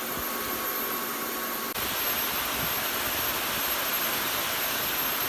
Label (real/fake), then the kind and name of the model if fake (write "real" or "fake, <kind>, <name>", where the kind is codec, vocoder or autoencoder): real